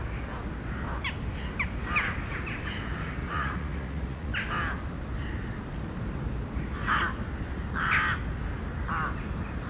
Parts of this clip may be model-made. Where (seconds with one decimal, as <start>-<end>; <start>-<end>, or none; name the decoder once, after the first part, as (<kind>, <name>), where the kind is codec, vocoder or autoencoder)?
3.2-4.3 (vocoder, Vocos)